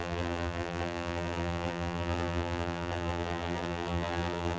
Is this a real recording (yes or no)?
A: no